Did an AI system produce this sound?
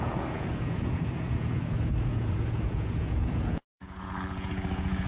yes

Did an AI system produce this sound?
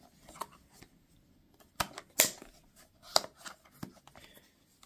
no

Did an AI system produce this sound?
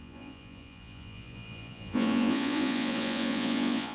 yes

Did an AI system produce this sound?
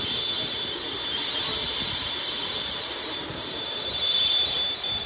no